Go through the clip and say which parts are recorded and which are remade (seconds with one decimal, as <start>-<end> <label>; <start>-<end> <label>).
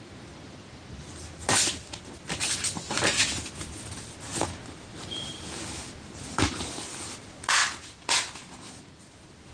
0.0-9.5 recorded